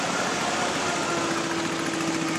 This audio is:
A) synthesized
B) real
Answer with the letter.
B